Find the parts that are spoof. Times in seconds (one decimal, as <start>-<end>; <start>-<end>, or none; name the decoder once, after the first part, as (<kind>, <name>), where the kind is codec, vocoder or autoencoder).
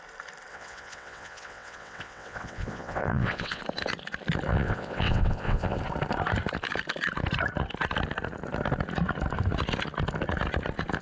0.5-3.6 (vocoder, WaveNeXt); 4.5-5.8